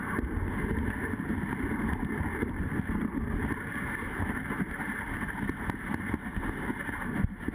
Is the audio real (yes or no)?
yes